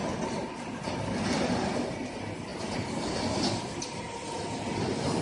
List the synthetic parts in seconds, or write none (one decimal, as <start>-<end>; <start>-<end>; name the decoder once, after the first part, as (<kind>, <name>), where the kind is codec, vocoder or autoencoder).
none

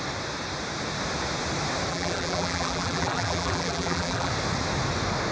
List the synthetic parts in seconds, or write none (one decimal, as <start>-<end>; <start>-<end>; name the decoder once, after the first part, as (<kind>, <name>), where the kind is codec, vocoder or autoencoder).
1.9-4.3 (vocoder, BigVGAN v2)

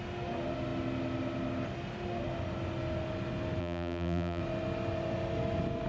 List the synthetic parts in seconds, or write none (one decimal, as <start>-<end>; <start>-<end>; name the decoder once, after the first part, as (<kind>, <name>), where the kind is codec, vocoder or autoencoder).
3.6-4.4 (vocoder, BigVGAN v2)

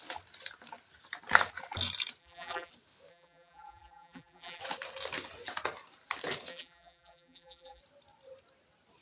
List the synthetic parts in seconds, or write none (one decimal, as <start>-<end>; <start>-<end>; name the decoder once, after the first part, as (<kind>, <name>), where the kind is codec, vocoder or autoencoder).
2.2-2.7 (vocoder, BigVGAN v2); 3.1-4.6; 6.5-7.8

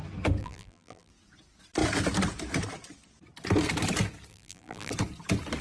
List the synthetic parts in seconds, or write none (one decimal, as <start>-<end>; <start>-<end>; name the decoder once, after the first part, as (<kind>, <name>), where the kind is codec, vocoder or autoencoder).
0.4-1.1 (vocoder, BigVGAN v2); 4.3-4.9

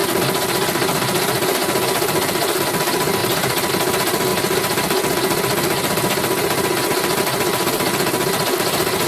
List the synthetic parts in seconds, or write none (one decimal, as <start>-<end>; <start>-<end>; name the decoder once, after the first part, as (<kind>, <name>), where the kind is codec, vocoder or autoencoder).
none

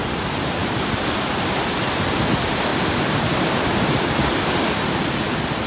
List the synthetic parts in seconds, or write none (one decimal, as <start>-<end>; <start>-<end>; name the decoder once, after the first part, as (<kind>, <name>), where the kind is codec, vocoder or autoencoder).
2.7-5.7 (vocoder, BigVGAN v2)